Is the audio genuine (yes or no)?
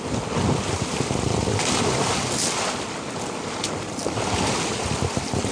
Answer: yes